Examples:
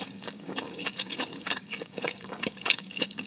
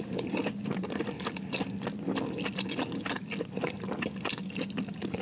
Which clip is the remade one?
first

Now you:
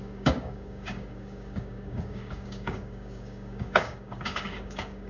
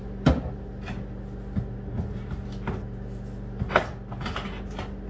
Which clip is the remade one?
first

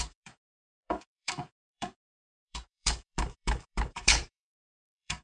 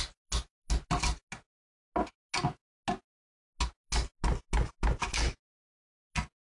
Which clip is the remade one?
first